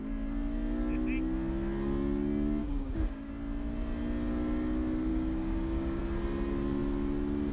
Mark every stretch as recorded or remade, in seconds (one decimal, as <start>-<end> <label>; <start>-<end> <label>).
0.0-2.6 recorded; 2.6-3.3 remade; 3.3-5.1 recorded; 5.1-6.0 remade; 6.0-7.5 recorded